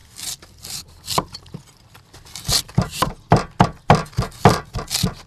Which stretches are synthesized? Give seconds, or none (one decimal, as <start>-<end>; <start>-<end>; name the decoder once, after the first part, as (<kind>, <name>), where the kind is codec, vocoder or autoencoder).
0.0-3.1 (vocoder, BigVGAN v2)